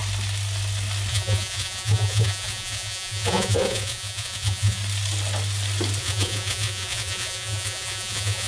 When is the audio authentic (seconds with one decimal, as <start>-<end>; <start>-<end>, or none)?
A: 0.0-1.1; 4.8-6.0